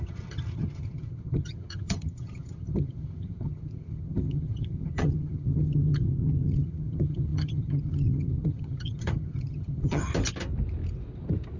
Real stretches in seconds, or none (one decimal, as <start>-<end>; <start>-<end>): 10.1-11.6